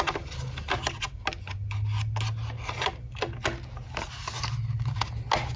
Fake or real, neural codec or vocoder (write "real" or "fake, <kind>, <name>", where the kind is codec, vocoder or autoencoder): real